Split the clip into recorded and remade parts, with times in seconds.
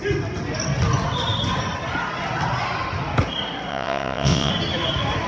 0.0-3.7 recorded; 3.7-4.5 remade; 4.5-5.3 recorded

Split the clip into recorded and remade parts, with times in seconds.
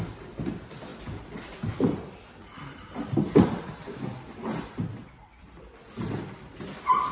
0.0-0.9 recorded; 0.9-4.0 remade; 4.0-5.0 recorded; 5.0-6.1 remade; 6.1-7.1 recorded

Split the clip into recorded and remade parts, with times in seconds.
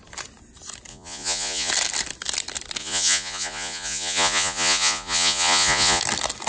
0.0-0.9 recorded; 0.9-1.7 remade; 1.7-2.8 recorded; 2.8-6.0 remade; 6.0-6.5 recorded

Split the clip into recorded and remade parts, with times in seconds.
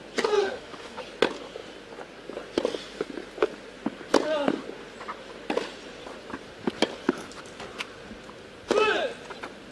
0.0-0.4 recorded; 0.4-1.0 remade; 1.0-9.7 recorded